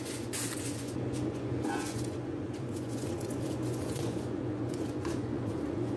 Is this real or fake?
fake